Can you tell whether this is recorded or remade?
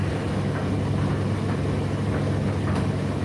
recorded